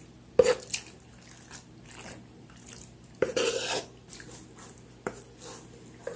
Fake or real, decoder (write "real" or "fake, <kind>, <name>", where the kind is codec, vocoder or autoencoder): real